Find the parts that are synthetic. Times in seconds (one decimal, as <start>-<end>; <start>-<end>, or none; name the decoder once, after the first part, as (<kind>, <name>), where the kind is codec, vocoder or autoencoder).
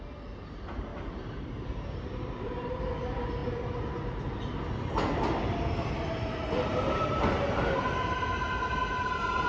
0.9-2.8 (vocoder, BigVGAN v2); 6.7-7.6; 8.8-9.5